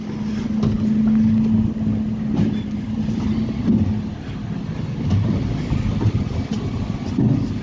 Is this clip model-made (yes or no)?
no